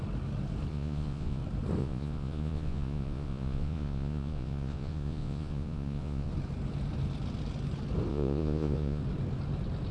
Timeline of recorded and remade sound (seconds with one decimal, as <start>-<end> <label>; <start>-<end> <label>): 0.0-0.7 recorded; 0.7-1.4 remade; 1.4-1.8 recorded; 1.8-6.3 remade; 6.3-8.1 recorded; 8.1-9.0 remade; 9.0-9.9 recorded